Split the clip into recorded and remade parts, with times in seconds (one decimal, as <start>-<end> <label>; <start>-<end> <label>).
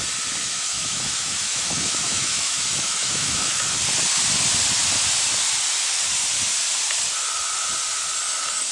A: 0.0-0.4 recorded; 0.4-3.6 remade; 3.6-8.7 recorded